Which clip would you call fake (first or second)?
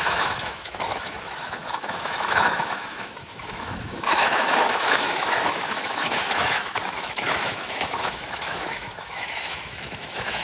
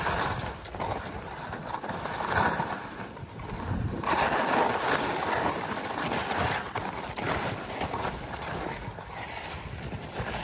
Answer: first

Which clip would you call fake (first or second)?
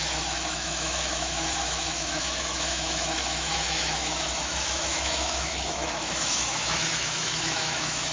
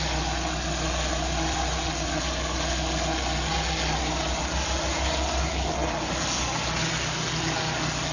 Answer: first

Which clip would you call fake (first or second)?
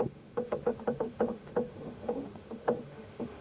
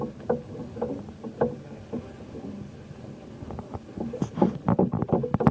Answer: first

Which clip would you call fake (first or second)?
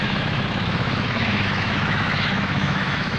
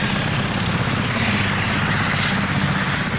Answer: first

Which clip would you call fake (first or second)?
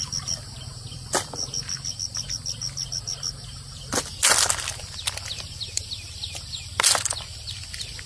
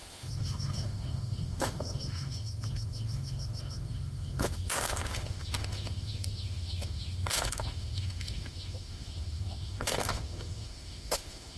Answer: second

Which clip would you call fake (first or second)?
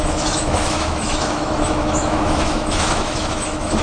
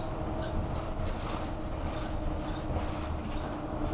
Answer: first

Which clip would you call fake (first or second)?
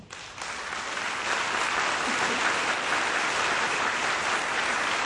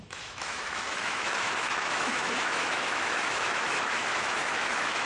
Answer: second